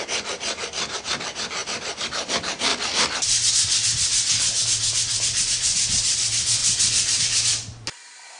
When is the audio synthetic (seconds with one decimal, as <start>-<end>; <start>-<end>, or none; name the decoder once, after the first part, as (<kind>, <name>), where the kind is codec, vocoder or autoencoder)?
1.6-2.3 (vocoder, BigVGAN v2); 2.7-3.5